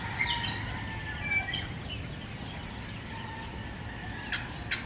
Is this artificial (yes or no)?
no